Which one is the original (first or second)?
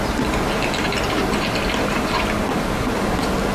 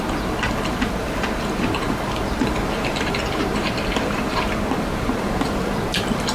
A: first